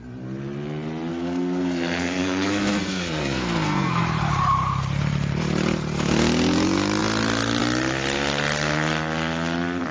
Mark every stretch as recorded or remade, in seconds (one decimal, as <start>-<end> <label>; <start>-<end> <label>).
0.0-1.1 recorded; 1.1-4.0 remade; 4.0-9.9 recorded